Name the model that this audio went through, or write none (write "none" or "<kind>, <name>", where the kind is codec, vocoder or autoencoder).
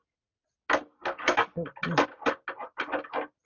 none